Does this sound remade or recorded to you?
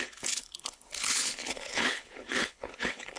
remade